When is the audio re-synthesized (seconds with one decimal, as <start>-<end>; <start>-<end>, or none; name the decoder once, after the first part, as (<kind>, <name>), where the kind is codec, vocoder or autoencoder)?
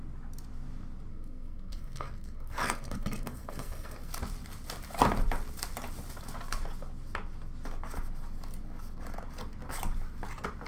1.1-4.1 (codec, SNAC)